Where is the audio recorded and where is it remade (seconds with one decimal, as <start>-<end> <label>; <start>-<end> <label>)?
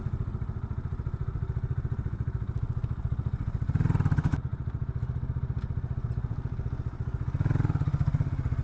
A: 0.0-8.6 recorded